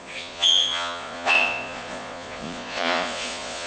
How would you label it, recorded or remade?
remade